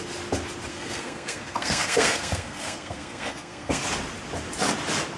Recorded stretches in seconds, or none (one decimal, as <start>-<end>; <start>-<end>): 0.0-0.7; 3.8-5.2